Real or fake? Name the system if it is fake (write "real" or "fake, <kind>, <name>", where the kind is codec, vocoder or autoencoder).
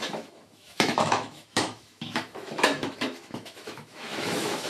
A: fake, autoencoder, DAC-VAE